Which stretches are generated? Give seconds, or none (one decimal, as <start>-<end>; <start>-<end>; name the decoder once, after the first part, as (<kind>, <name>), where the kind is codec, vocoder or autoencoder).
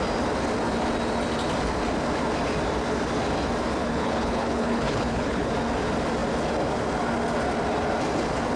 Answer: 3.8-5.5 (codec, HILCodec)